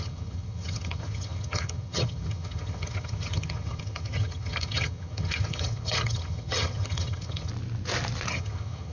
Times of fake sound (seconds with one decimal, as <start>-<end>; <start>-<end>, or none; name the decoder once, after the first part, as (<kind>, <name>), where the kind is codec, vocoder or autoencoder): 0.0-7.5 (vocoder, HiFi-GAN); 8.3-8.9